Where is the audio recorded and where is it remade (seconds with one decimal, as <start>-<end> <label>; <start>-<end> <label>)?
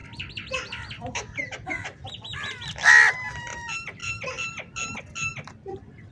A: 0.0-6.1 remade